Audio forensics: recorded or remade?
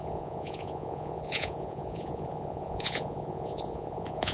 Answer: remade